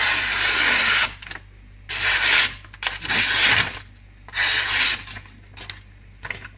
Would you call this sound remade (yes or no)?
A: no